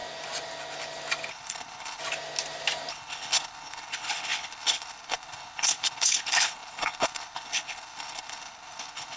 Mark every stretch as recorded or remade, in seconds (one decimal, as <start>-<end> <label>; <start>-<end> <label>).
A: 0.0-1.3 recorded; 1.3-2.0 remade; 2.0-2.9 recorded; 2.9-9.2 remade